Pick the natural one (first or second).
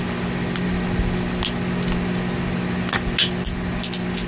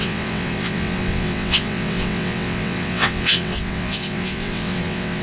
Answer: first